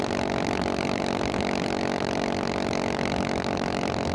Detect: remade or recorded recorded